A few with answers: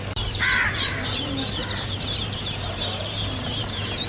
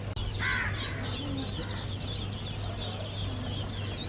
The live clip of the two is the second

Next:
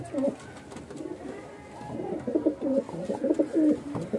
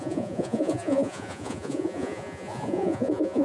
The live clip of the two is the first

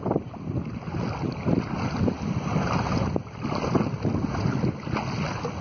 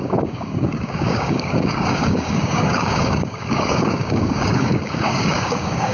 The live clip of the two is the first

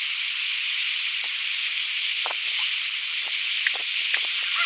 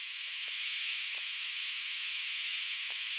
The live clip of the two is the first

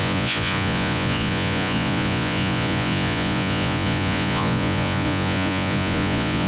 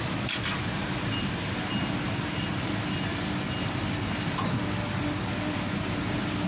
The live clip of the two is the second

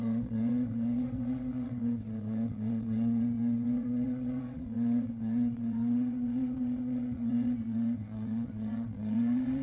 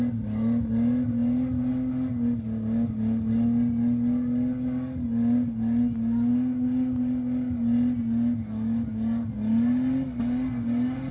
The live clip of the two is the second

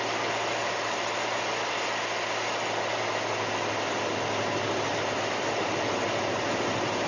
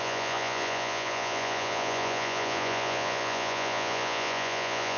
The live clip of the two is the first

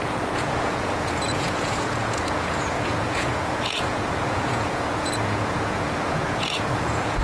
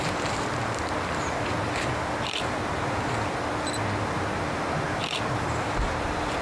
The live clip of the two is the second